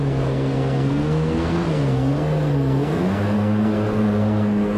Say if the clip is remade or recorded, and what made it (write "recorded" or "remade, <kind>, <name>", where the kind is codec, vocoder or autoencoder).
remade, codec, SNAC